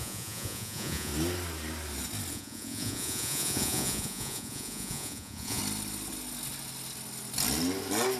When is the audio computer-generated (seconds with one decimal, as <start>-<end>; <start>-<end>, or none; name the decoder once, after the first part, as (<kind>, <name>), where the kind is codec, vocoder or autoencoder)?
0.0-1.1 (vocoder, Vocos); 2.3-5.6